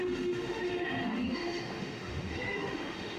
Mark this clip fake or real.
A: fake